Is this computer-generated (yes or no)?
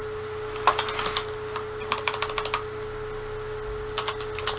no